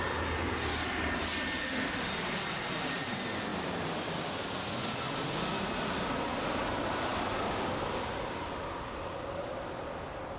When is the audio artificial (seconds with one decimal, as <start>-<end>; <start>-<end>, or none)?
1.6-2.1